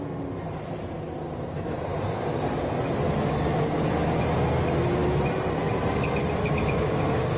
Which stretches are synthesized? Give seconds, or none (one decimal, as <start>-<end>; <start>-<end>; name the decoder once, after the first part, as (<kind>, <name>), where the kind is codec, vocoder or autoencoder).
6.4-7.4 (codec, DAC)